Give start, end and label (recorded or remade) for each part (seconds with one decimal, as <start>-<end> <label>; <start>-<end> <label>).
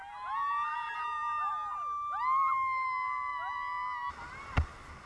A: 0.0-5.1 recorded